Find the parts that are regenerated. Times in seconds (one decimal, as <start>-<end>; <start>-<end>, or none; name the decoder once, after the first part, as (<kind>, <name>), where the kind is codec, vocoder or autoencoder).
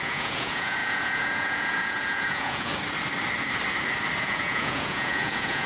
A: 0.0-2.7 (vocoder, Vocos); 4.2-5.7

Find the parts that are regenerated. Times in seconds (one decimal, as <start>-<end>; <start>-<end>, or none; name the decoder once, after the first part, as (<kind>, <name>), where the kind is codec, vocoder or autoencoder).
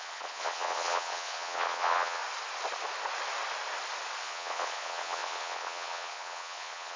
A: 0.0-2.2 (vocoder, Vocos); 4.2-7.0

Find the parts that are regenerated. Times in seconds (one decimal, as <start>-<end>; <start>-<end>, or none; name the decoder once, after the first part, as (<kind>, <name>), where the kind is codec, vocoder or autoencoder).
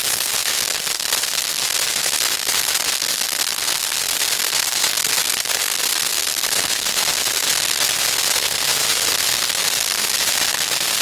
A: 0.0-11.0 (codec, SNAC)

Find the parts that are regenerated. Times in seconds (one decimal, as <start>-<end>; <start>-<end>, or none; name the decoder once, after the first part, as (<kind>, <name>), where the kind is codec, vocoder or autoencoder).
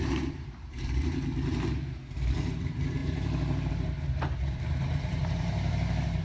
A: 0.0-6.2 (vocoder, BigVGAN v2)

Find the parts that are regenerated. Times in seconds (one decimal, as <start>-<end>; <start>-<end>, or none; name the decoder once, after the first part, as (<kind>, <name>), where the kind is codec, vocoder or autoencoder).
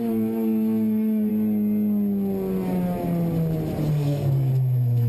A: 0.0-1.3 (codec, SNAC); 3.9-5.1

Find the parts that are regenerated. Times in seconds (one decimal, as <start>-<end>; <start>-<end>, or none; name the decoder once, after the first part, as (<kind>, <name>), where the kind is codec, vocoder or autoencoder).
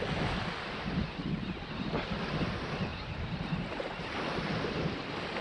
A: 2.9-4.0 (vocoder, BigVGAN v2)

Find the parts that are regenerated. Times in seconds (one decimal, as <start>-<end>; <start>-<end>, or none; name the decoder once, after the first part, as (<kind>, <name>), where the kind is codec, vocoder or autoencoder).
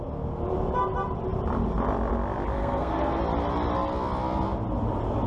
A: 2.6-3.2 (codec, SNAC)